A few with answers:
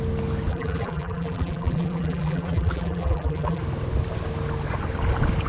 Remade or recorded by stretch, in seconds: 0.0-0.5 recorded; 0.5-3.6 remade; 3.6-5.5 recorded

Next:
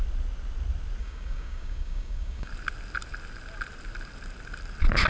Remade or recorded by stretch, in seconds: 0.0-1.0 recorded; 1.0-2.5 remade; 2.5-5.1 recorded

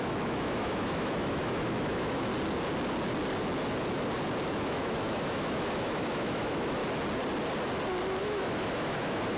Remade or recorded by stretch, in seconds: 0.0-2.3 remade; 2.3-4.5 recorded; 4.5-6.8 remade; 6.8-8.2 recorded; 8.2-9.4 remade

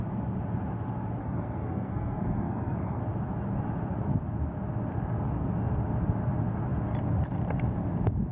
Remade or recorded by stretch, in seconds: 0.0-1.2 recorded; 1.2-3.0 remade; 3.0-8.3 recorded